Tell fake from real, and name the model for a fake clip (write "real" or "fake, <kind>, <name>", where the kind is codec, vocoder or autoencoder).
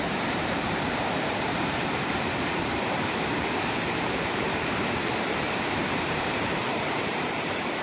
fake, vocoder, BigVGAN v2